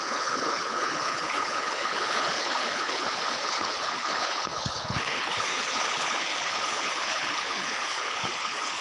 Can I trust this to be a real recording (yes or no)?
no